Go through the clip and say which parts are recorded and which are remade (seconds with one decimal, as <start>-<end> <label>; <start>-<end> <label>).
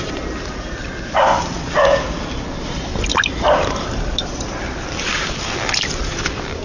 0.0-6.6 remade